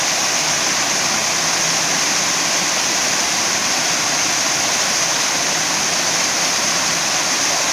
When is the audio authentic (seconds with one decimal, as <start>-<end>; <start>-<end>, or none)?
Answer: 0.0-7.7